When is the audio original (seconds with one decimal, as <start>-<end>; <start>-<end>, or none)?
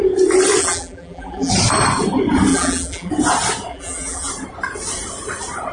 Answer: 0.0-0.6; 1.5-2.5; 3.1-3.7; 4.3-5.7